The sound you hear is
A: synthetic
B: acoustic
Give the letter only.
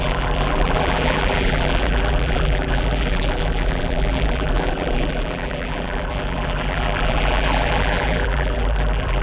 A